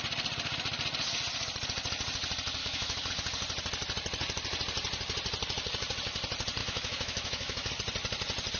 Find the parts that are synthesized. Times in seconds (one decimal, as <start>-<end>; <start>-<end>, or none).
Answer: 2.6-3.1; 6.6-7.7